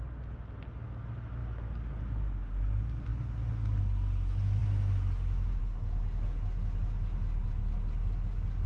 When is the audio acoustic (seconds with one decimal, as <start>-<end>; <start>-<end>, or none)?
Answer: 0.0-8.7